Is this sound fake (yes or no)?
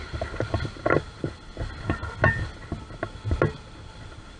no